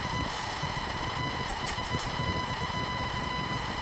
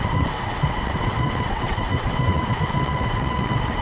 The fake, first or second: second